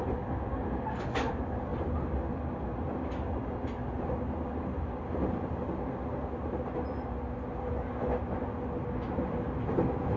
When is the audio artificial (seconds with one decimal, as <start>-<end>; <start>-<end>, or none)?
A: none